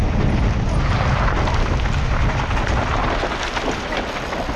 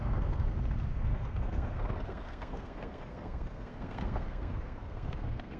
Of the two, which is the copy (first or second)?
second